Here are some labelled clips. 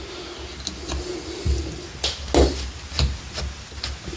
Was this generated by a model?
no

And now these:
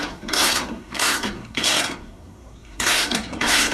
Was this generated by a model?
yes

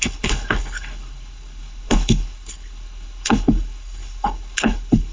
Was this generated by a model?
yes